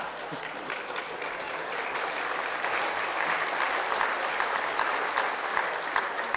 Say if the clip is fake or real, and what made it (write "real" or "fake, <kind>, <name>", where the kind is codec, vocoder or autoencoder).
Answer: real